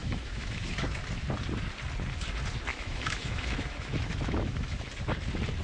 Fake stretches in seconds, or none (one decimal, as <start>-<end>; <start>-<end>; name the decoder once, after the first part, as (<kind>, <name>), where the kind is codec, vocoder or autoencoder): 0.0-0.6 (autoencoder, DAC-VAE); 2.7-4.9